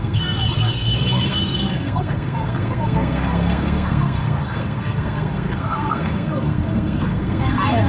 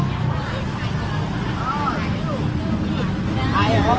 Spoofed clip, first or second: first